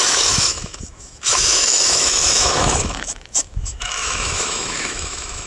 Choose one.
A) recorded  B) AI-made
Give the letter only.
B